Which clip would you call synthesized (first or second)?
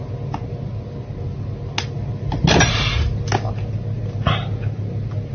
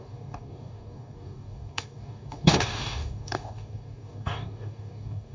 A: second